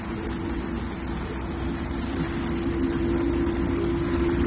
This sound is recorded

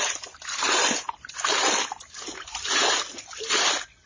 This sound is recorded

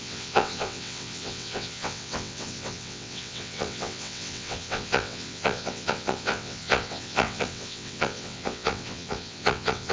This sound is remade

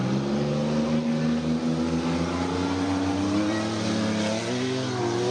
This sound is recorded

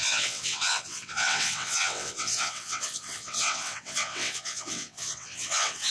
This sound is remade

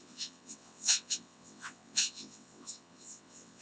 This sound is remade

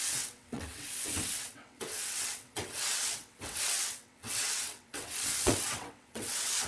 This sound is remade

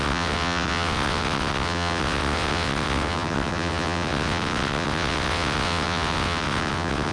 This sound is remade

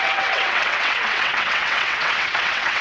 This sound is remade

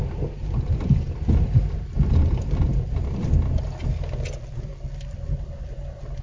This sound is recorded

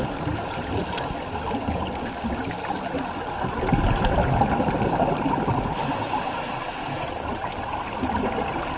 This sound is recorded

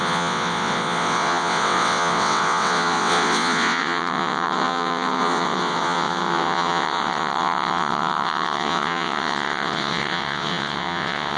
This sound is remade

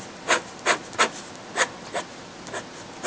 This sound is recorded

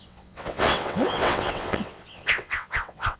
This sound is remade